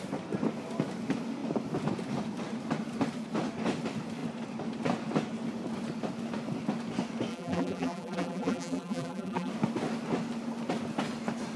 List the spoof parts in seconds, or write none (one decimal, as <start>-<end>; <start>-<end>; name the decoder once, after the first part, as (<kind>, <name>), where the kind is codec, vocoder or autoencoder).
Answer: 7.3-9.5 (vocoder, BigVGAN v2)